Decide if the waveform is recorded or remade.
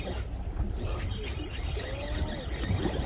recorded